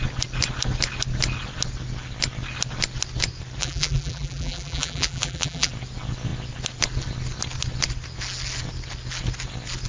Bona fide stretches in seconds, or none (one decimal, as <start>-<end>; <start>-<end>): 0.0-3.6; 5.7-9.9